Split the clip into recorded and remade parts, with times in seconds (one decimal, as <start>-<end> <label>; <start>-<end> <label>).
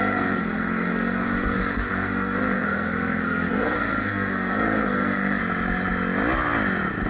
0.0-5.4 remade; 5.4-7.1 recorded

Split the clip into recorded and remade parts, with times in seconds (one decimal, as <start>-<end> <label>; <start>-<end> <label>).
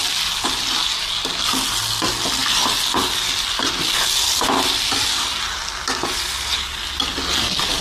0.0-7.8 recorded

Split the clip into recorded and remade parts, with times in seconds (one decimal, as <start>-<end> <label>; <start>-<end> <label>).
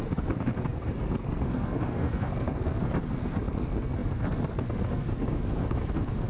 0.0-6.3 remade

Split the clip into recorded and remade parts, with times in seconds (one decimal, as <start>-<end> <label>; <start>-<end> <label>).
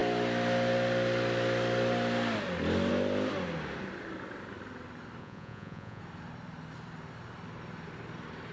0.0-5.2 recorded; 5.2-6.0 remade; 6.0-8.5 recorded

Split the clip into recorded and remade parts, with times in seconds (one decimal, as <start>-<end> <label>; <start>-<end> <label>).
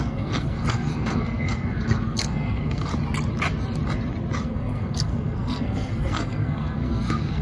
0.0-2.9 remade; 2.9-4.4 recorded; 4.4-7.4 remade